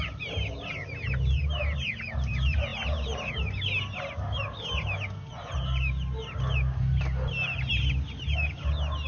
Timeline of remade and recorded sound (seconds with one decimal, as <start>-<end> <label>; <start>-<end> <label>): 0.0-2.7 recorded; 2.7-3.3 remade; 3.3-9.1 recorded